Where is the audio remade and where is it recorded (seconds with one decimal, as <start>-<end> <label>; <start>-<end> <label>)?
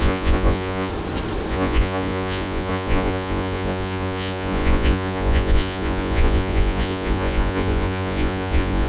0.0-0.9 remade; 0.9-1.5 recorded; 1.5-8.9 remade